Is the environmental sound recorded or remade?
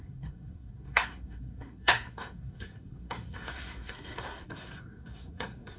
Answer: remade